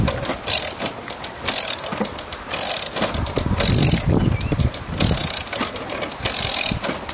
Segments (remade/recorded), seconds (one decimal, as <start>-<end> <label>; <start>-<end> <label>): 0.0-7.1 recorded